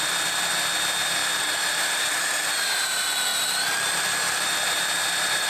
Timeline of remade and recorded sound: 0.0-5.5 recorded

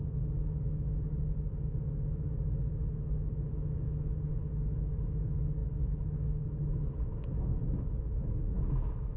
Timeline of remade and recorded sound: 0.0-9.2 remade

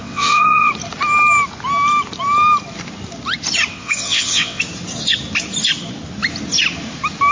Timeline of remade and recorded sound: 0.0-0.7 remade; 0.7-3.7 recorded; 3.7-4.6 remade; 4.6-7.3 recorded